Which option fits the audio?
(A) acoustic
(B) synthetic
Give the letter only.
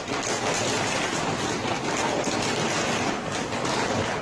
A